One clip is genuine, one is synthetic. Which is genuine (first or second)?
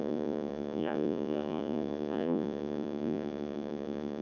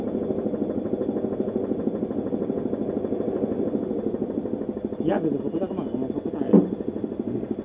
second